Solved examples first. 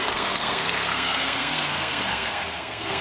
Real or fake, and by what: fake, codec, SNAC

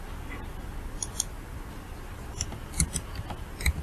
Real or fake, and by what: real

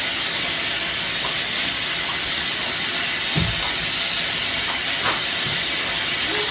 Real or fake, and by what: real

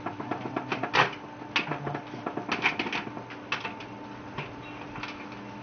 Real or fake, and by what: real